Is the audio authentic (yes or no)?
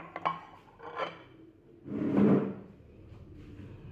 yes